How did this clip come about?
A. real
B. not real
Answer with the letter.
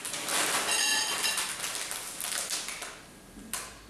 A